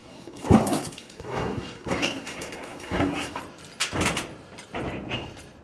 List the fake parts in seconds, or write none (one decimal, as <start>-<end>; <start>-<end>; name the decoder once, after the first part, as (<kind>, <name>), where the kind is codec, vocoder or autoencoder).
0.0-3.4 (codec, SNAC)